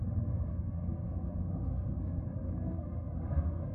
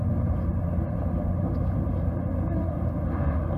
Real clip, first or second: second